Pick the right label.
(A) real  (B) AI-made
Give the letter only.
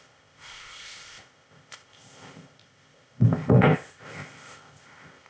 B